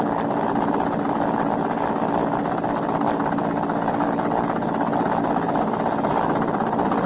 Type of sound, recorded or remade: recorded